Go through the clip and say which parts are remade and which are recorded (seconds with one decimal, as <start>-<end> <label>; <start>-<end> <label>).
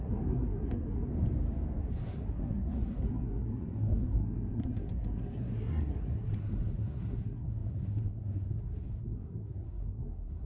0.0-1.1 remade; 1.1-1.8 recorded; 1.8-10.5 remade